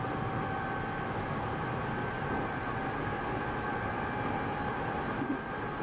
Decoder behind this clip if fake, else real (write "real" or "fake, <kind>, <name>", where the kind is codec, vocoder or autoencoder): real